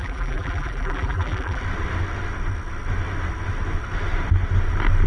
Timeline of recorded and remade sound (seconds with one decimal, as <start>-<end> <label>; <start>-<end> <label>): 0.0-1.6 remade; 1.6-5.1 recorded